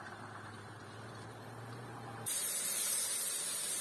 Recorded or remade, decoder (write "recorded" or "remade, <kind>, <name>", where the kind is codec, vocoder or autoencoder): remade, vocoder, BigVGAN v2